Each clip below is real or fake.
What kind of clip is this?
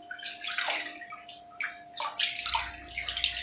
real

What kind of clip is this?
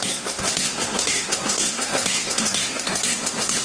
fake